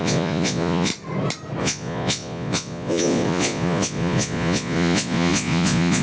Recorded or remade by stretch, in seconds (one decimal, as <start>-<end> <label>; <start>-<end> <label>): 0.0-0.9 remade; 0.9-1.6 recorded; 1.6-6.0 remade